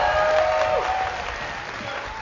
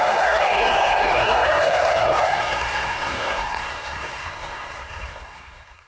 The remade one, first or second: second